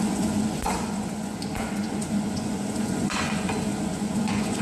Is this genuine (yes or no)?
no